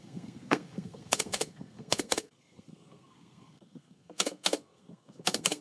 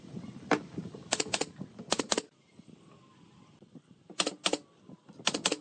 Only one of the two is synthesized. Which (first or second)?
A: first